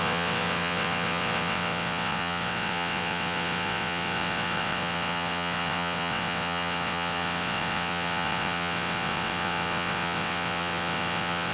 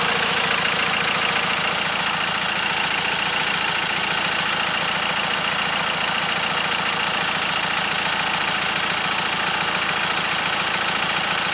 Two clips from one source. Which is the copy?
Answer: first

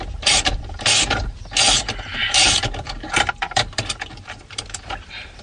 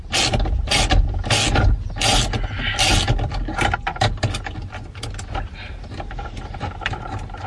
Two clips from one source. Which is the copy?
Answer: first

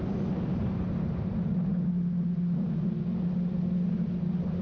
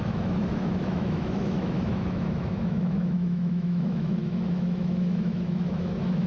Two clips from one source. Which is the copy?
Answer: second